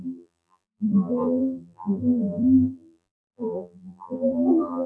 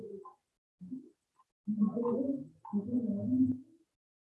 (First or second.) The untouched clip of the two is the second